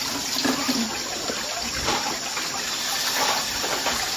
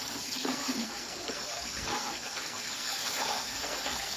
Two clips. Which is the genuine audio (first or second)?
first